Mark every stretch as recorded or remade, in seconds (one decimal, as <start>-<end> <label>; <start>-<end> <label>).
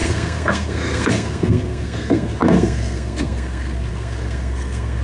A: 0.0-5.0 remade